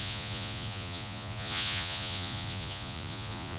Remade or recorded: remade